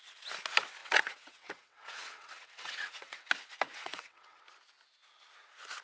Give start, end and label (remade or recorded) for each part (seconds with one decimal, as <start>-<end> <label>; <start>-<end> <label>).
0.0-0.8 recorded; 0.8-3.3 remade; 3.3-3.7 recorded; 3.7-4.4 remade; 4.4-5.8 recorded